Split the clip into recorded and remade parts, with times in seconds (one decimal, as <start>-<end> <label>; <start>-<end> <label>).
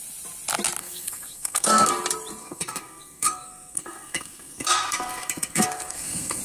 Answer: 0.0-0.8 recorded; 0.8-1.9 remade; 1.9-2.4 recorded; 2.4-6.4 remade